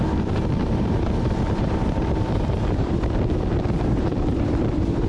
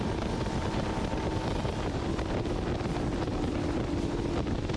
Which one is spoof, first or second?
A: first